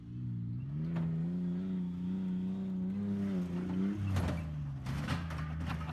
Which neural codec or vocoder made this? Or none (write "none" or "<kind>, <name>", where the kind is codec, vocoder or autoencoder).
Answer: none